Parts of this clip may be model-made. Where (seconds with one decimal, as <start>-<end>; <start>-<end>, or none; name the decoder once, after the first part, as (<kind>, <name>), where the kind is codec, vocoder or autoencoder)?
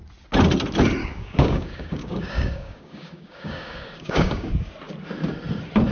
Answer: 1.0-4.5 (codec, DAC)